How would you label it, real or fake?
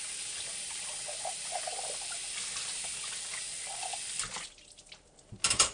real